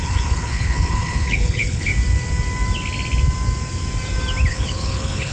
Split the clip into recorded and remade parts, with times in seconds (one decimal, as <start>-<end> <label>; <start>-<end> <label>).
0.0-1.9 remade; 1.9-4.5 recorded; 4.5-5.3 remade